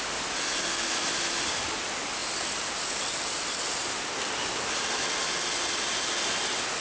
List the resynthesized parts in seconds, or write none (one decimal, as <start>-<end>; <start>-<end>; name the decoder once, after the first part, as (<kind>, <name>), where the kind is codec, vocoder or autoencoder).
none